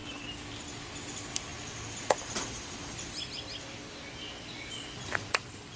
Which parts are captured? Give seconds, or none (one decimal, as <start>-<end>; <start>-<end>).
0.0-5.8